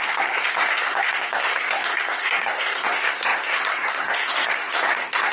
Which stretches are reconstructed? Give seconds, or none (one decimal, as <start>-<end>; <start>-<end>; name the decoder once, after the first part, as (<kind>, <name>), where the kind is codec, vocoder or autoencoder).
0.0-5.3 (codec, SNAC)